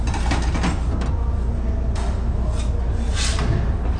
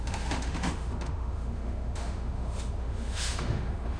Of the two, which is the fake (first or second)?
second